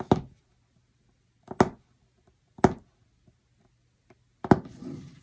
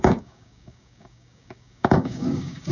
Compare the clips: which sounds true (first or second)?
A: first